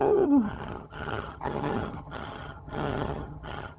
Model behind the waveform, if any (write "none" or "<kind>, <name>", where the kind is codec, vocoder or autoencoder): vocoder, HiFi-GAN